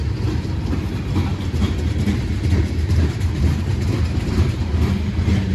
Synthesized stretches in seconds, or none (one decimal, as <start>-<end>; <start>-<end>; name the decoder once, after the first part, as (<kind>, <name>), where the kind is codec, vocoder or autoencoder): 1.3-4.6 (vocoder, BigVGAN v2)